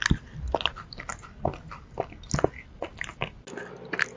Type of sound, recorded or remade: recorded